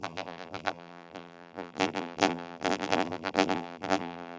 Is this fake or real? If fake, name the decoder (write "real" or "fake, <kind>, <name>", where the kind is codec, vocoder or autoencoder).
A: fake, vocoder, BigVGAN v2